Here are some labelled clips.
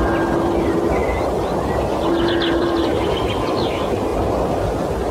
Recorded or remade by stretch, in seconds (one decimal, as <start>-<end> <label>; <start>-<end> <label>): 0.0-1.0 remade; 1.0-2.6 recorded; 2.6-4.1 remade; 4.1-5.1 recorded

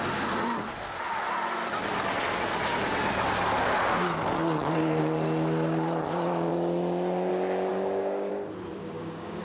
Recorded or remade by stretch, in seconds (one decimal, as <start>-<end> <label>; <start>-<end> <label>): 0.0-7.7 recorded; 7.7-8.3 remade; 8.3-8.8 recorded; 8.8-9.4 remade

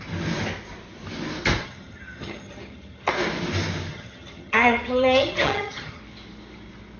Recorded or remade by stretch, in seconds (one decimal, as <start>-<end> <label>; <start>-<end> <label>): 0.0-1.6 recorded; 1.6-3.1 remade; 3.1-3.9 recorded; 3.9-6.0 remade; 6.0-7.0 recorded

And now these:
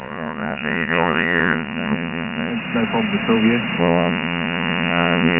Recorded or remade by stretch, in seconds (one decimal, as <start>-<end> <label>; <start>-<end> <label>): 0.0-2.5 remade; 2.5-3.8 recorded; 3.8-5.4 remade

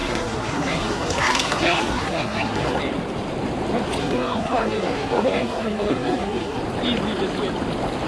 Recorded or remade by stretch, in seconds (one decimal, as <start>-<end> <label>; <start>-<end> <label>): 0.0-2.8 remade; 2.8-4.0 recorded; 4.0-6.6 remade; 6.6-8.1 recorded

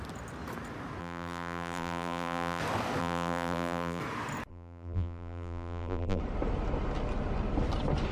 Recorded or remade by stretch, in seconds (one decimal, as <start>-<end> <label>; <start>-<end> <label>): 0.0-1.0 recorded; 1.0-2.6 remade; 2.6-3.0 recorded; 3.0-4.0 remade; 4.0-4.5 recorded; 4.5-6.2 remade; 6.2-8.1 recorded

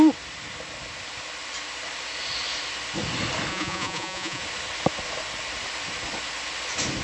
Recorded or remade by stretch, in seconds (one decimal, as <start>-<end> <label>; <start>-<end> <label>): 0.0-3.5 recorded; 3.5-4.4 remade; 4.4-7.0 recorded

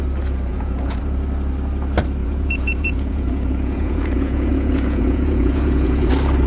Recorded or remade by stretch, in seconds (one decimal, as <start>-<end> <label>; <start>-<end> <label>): 0.0-0.5 recorded; 0.5-1.0 remade; 1.0-2.2 recorded; 2.2-6.1 remade; 6.1-6.5 recorded